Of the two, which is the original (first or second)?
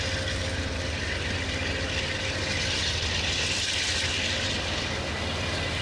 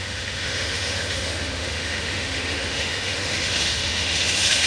first